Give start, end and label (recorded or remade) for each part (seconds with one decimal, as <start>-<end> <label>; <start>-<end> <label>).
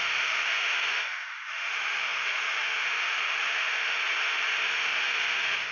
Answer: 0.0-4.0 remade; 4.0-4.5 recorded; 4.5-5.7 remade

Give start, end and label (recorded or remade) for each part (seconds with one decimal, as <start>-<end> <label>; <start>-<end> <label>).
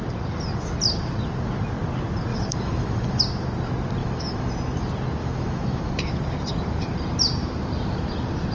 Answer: 0.0-2.3 recorded; 2.3-3.2 remade; 3.2-4.0 recorded; 4.0-4.5 remade; 4.5-5.2 recorded; 5.2-5.9 remade; 5.9-8.5 recorded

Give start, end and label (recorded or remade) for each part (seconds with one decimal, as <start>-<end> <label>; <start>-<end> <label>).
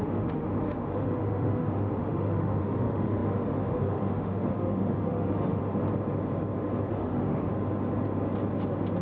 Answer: 0.0-5.6 remade; 5.6-6.9 recorded; 6.9-7.5 remade; 7.5-9.0 recorded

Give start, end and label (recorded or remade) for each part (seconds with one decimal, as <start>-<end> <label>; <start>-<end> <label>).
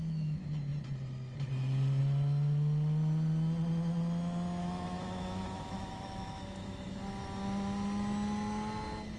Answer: 0.0-4.6 recorded; 4.6-6.9 remade; 6.9-9.2 recorded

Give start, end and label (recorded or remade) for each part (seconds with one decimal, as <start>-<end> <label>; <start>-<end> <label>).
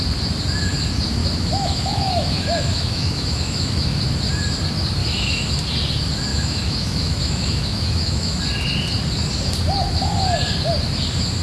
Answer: 0.0-1.2 recorded; 1.2-4.0 remade; 4.0-5.0 recorded; 5.0-5.5 remade; 5.5-6.3 recorded; 6.3-8.4 remade; 8.4-11.4 recorded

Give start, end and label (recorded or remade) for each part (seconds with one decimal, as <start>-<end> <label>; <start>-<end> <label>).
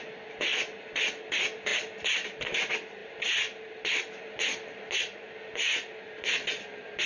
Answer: 0.0-7.1 recorded